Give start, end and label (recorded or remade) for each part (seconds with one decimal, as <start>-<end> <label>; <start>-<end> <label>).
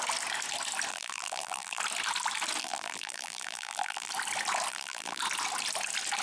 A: 0.0-0.9 recorded; 0.9-1.8 remade; 1.8-2.6 recorded; 2.6-4.1 remade; 4.1-4.7 recorded; 4.7-5.2 remade; 5.2-6.2 recorded